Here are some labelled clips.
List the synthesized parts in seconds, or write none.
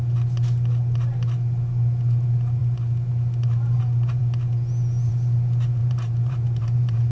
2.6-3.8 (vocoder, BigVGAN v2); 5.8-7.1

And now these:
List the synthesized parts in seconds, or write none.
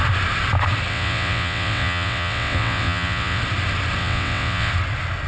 0.9-3.4 (vocoder, WaveNeXt); 4.0-4.7